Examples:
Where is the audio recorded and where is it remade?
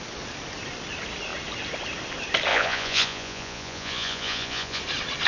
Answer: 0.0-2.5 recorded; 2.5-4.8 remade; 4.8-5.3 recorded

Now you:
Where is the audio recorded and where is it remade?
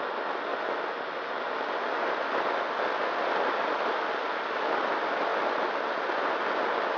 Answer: 0.0-7.0 recorded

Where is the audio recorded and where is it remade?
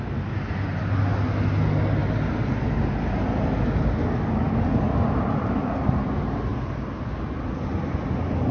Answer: 0.0-8.5 recorded